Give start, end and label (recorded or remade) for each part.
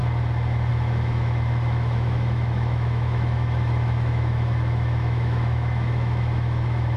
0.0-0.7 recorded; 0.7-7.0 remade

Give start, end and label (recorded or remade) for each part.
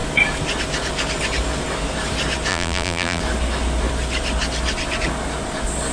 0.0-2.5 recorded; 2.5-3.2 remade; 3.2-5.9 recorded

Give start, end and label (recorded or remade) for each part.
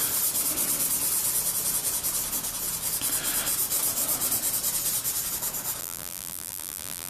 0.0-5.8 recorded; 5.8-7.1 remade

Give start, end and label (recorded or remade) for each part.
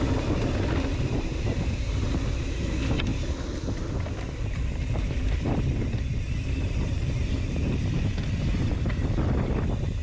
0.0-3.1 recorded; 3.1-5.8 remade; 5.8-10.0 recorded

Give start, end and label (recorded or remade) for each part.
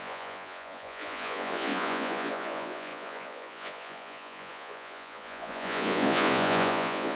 0.0-7.2 remade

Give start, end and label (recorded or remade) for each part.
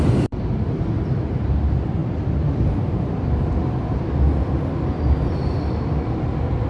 0.0-6.7 remade